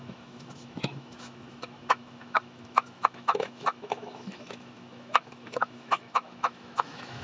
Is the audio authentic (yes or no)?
no